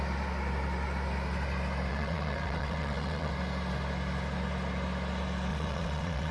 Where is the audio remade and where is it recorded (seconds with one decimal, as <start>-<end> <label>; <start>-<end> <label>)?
0.0-1.9 recorded; 1.9-3.3 remade; 3.3-5.5 recorded; 5.5-6.3 remade